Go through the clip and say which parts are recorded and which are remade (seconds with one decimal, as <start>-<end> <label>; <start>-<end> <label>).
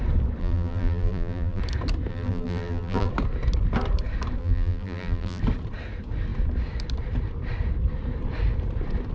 0.0-0.4 recorded; 0.4-1.6 remade; 1.6-2.1 recorded; 2.1-3.1 remade; 3.1-4.4 recorded; 4.4-5.4 remade; 5.4-9.1 recorded